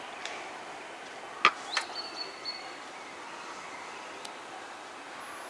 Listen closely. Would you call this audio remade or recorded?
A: recorded